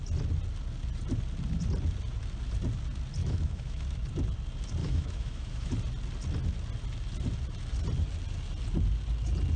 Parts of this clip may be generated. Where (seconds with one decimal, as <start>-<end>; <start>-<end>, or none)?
3.2-3.8; 4.8-5.7